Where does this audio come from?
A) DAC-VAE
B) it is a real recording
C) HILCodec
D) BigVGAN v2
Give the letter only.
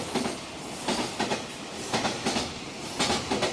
B